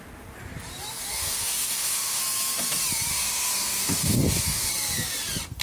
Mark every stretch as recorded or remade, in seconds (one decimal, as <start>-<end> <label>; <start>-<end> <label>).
0.0-1.1 recorded; 1.1-2.2 remade; 2.2-3.1 recorded; 3.1-4.7 remade; 4.7-5.6 recorded